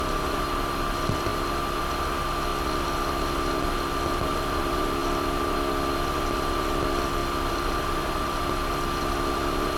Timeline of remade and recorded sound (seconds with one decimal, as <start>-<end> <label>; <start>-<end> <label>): 0.0-9.8 recorded